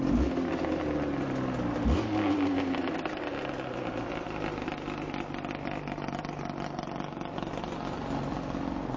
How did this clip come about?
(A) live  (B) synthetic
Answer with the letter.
A